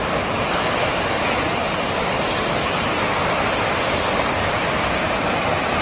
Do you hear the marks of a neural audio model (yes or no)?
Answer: no